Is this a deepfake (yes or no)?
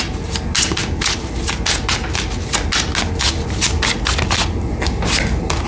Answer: no